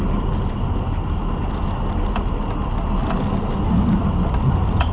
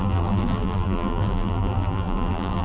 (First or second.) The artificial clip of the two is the second